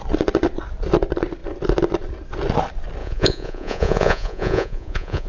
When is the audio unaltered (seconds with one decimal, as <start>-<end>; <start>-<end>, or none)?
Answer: 0.0-3.0

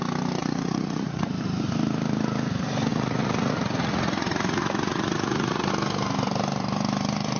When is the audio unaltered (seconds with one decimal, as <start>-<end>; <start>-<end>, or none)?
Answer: 0.0-0.4; 1.3-2.9; 5.7-7.4

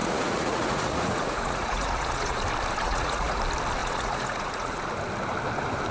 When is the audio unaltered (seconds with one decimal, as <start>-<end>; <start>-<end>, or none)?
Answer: 2.4-2.8; 3.4-3.8; 4.8-5.9

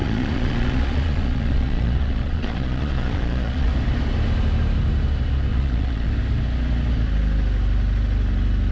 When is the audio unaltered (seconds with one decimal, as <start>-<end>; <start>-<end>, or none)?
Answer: 3.7-5.5; 6.1-8.7

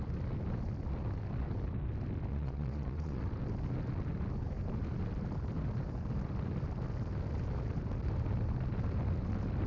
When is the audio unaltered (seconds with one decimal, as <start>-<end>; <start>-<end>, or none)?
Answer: 0.0-2.3; 3.2-9.7

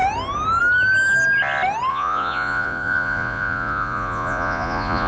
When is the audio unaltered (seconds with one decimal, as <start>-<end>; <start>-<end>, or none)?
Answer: 0.0-1.9